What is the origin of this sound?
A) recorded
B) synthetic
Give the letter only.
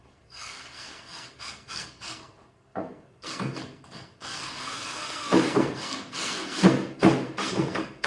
B